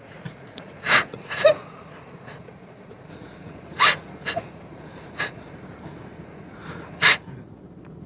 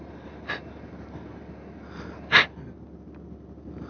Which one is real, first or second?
second